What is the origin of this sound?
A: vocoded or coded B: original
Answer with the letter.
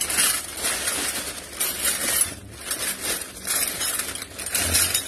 B